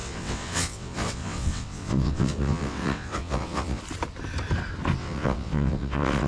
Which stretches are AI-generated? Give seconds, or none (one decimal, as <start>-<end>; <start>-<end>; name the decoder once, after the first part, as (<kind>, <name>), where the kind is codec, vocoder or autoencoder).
0.0-3.8 (vocoder, WaveNeXt); 5.0-6.3